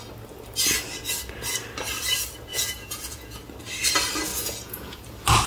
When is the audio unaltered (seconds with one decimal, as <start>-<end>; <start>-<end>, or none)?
0.0-2.5; 3.4-4.3; 5.0-5.5

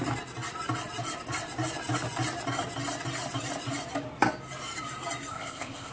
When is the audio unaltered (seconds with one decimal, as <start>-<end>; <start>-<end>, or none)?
0.0-5.3

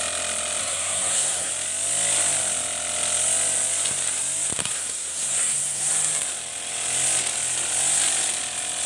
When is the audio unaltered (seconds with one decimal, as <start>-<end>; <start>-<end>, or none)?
0.0-0.6; 1.5-4.6; 5.9-8.9

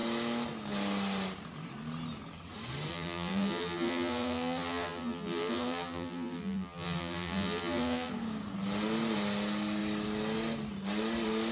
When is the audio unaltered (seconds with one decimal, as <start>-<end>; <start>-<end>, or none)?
0.0-2.9; 8.1-11.5

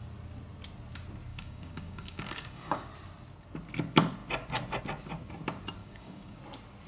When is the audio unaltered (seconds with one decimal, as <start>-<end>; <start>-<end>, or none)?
0.0-1.3; 2.9-5.8; 6.4-6.9